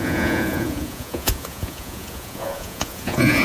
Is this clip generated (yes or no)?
yes